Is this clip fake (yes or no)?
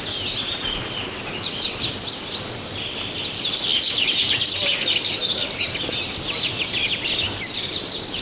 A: no